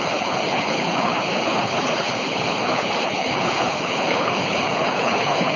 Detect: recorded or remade remade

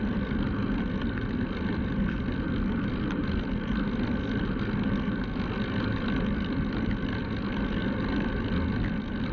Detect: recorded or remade recorded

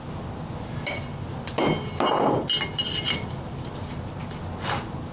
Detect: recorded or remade recorded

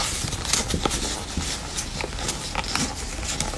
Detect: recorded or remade recorded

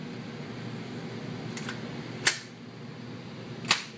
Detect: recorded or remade recorded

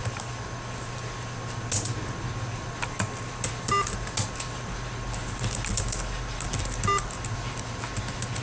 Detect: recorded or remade recorded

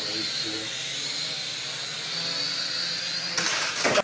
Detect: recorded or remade recorded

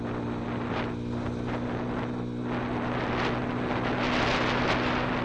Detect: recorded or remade recorded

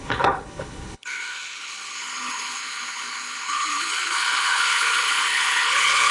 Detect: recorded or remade remade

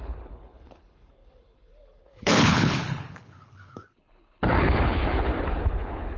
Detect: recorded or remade remade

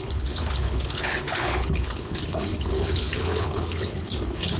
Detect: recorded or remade remade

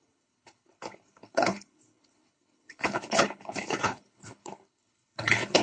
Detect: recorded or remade remade